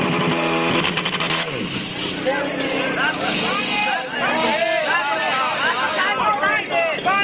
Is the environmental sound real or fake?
real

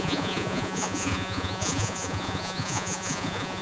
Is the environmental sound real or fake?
fake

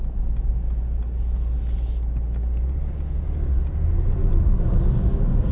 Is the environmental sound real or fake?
real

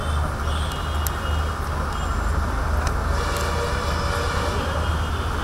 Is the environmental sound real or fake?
real